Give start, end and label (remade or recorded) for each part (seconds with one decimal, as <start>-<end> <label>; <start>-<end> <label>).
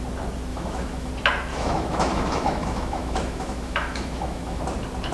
0.0-0.5 recorded; 0.5-1.1 remade; 1.1-1.5 recorded; 1.5-4.6 remade; 4.6-5.1 recorded